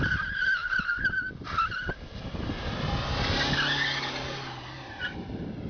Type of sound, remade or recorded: recorded